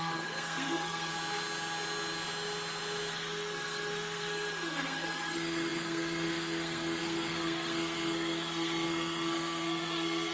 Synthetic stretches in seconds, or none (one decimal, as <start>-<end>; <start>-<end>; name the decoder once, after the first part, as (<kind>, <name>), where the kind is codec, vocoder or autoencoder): 0.0-1.1 (codec, SNAC); 3.1-10.3